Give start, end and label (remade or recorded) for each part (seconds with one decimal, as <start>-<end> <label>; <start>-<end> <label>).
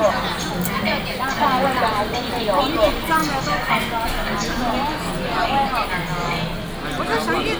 0.0-7.6 recorded